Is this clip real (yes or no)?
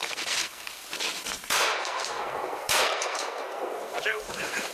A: no